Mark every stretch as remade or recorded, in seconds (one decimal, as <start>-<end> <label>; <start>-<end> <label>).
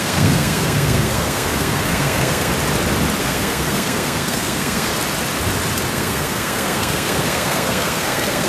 0.0-2.5 remade; 2.5-3.2 recorded; 3.2-4.9 remade; 4.9-5.9 recorded; 5.9-8.5 remade